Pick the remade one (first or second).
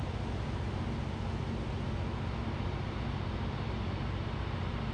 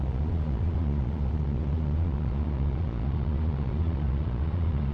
second